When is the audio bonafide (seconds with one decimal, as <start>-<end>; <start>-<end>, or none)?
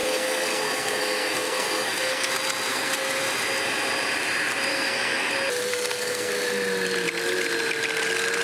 2.3-2.7; 3.2-4.7; 5.3-5.7; 6.3-8.4